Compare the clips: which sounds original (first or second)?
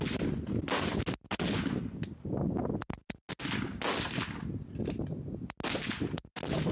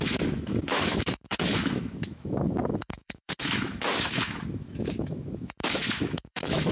first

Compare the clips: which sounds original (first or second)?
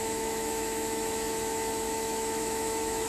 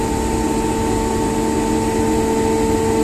second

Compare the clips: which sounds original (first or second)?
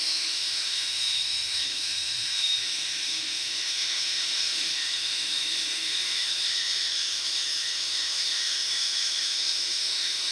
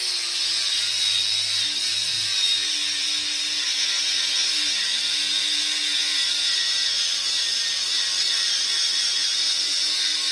second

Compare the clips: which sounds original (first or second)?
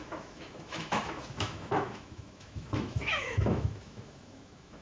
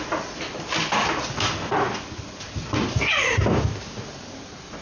second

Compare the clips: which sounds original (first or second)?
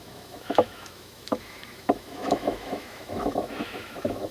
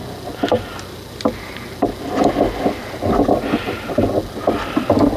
second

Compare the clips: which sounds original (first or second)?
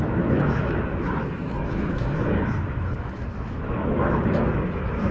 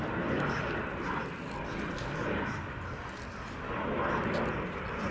second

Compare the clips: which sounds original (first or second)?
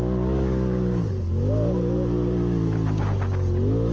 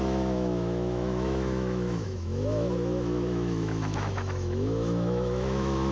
first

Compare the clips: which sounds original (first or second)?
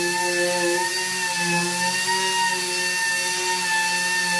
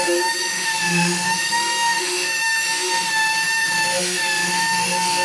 first